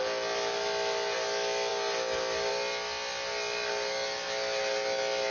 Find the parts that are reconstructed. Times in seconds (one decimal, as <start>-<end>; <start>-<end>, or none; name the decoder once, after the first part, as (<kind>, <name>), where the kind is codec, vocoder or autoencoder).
none